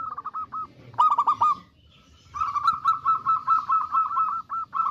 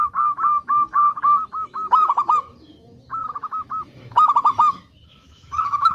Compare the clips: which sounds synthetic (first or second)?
second